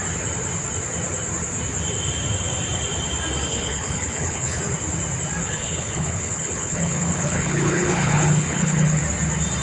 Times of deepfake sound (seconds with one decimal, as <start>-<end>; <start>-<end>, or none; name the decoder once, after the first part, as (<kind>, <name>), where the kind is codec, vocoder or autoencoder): 3.5-4.6 (codec, HILCodec); 5.4-9.0